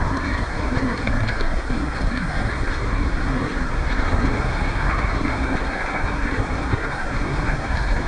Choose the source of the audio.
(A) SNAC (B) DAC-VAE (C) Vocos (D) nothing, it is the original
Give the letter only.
A